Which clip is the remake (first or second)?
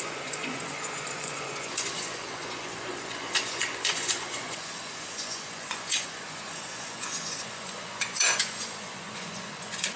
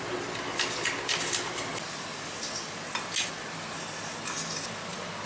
first